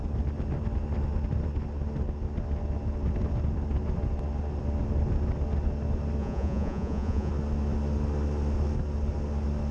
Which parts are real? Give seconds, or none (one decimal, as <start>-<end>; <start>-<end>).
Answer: 0.0-6.2; 7.3-9.7